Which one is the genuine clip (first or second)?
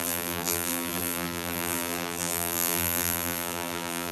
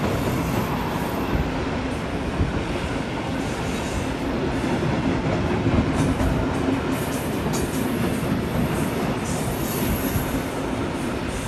second